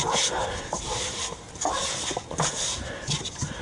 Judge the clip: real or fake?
real